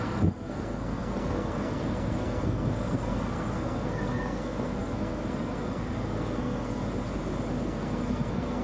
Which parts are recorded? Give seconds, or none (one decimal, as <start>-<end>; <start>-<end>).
6.8-7.6